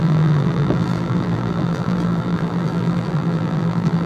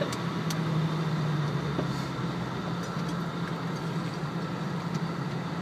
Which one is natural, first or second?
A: second